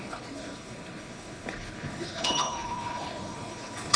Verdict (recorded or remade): remade